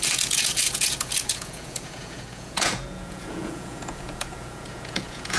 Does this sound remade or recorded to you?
remade